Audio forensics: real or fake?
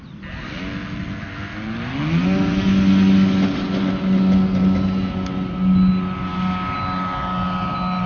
real